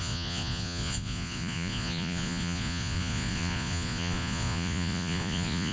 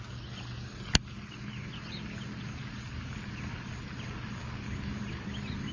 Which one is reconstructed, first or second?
first